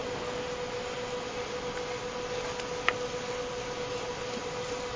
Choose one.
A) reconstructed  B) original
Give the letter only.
B